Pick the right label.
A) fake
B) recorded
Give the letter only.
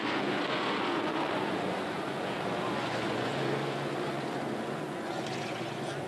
A